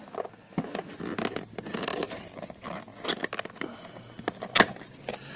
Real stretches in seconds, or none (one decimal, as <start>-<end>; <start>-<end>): 0.0-5.4